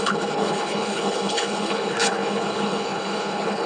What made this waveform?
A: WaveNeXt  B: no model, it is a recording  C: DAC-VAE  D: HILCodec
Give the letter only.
D